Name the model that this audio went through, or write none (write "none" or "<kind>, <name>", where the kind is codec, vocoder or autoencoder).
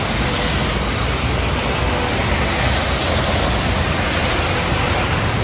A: none